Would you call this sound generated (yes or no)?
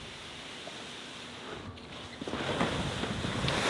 no